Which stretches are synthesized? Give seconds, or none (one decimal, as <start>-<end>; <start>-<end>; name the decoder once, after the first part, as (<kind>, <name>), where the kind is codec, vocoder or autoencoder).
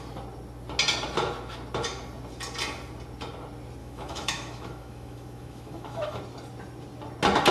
3.8-6.2 (autoencoder, DAC-VAE)